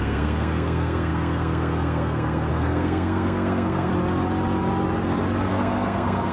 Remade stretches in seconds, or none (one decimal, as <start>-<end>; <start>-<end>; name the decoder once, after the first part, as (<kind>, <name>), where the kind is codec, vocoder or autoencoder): 0.0-3.9 (codec, SNAC); 5.5-6.3